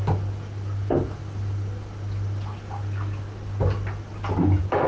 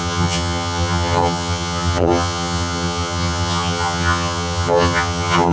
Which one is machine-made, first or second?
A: second